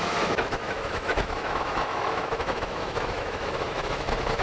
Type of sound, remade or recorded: remade